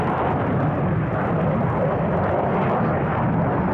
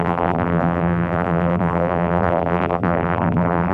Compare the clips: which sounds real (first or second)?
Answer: first